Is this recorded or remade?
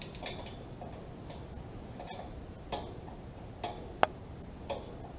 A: recorded